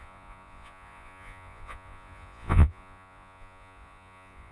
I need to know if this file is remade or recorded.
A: remade